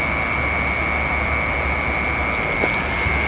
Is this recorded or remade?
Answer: recorded